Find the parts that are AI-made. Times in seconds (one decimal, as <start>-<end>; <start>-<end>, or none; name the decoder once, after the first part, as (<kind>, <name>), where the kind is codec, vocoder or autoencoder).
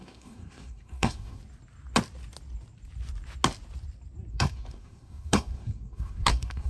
0.0-1.4 (codec, SNAC); 4.3-6.7